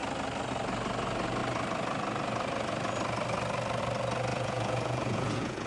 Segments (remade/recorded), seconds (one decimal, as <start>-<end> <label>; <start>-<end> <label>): 0.0-4.3 recorded; 4.3-5.7 remade